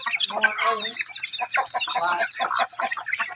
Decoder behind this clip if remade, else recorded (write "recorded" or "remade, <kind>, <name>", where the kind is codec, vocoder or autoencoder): recorded